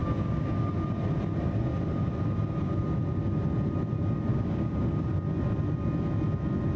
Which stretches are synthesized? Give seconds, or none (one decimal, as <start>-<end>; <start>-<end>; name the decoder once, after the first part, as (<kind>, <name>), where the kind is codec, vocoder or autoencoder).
0.0-0.5 (codec, DAC); 4.3-5.1